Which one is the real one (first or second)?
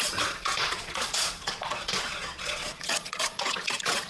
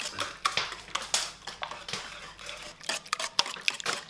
second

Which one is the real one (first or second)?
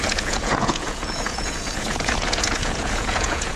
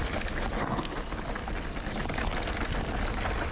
second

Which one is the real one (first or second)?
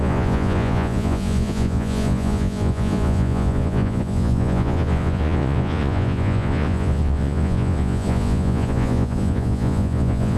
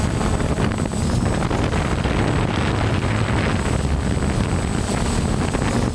second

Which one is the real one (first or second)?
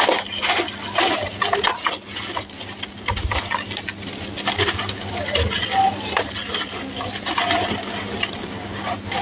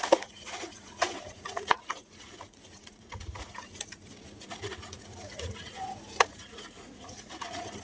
first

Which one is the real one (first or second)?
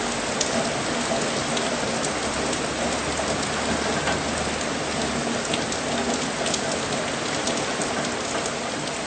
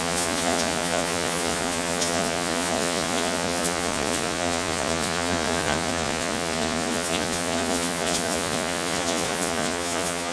first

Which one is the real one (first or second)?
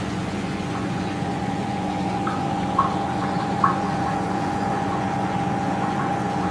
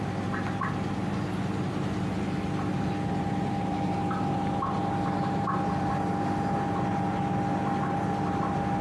second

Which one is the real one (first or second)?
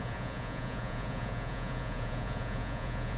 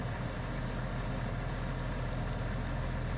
second